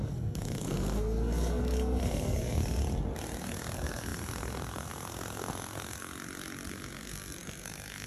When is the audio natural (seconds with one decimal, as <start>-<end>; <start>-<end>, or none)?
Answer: 2.8-3.4; 6.1-6.7